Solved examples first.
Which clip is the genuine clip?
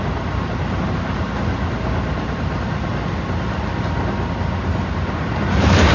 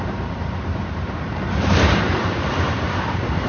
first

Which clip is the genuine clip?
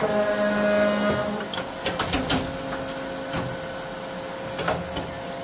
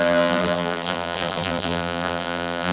first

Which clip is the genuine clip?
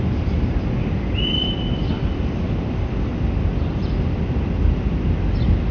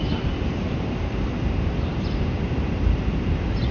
first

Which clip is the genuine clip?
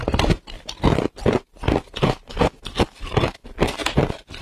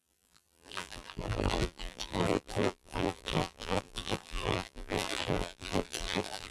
first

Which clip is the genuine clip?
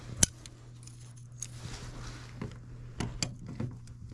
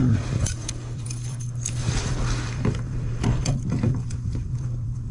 first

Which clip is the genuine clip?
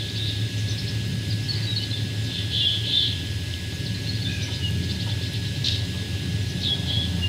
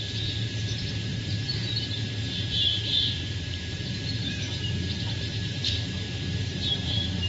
first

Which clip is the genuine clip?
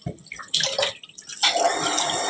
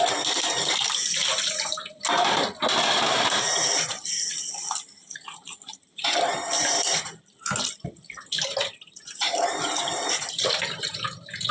first